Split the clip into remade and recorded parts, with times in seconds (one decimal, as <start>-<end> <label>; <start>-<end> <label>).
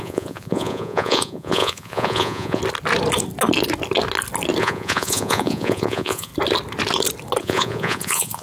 0.0-2.6 remade; 2.6-4.6 recorded; 4.6-6.3 remade; 6.3-7.4 recorded; 7.4-8.4 remade